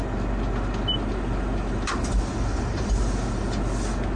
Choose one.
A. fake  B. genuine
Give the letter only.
B